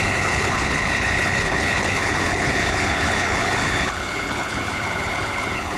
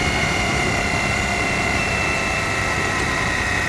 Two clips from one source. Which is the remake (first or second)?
first